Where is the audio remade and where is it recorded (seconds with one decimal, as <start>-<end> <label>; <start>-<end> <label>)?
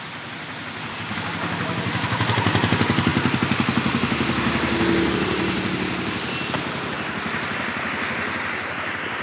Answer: 0.0-9.2 recorded